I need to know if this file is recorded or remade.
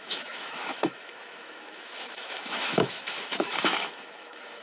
remade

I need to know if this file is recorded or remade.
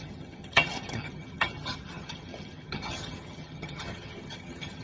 remade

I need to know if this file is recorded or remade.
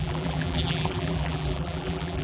remade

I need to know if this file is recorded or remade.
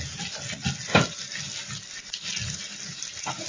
recorded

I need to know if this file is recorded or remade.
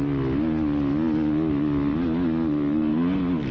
recorded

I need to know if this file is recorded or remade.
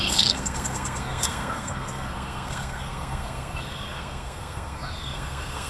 remade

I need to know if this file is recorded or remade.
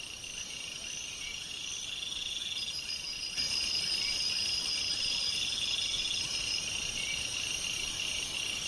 recorded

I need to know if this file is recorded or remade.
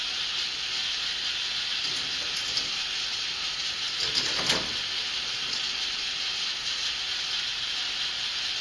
recorded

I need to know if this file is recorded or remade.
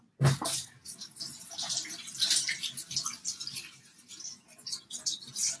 recorded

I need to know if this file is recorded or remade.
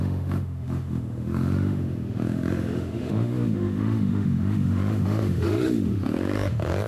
remade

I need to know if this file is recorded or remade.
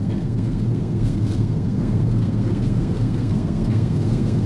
remade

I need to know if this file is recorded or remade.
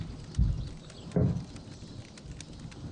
recorded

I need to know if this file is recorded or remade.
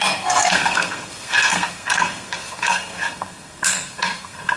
remade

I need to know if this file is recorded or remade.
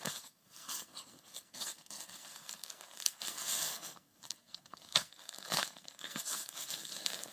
remade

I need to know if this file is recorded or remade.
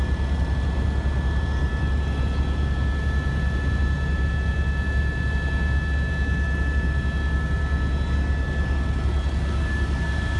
recorded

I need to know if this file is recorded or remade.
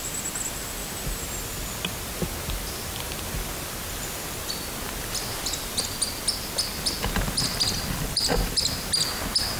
recorded